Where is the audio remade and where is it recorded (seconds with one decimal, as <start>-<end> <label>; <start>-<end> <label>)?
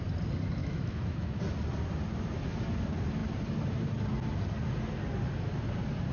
0.0-0.6 recorded; 0.6-1.4 remade; 1.4-6.1 recorded